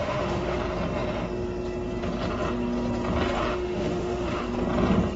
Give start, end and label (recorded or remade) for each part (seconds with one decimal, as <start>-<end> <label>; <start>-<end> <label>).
0.0-0.6 remade; 0.6-3.5 recorded; 3.5-4.4 remade; 4.4-5.2 recorded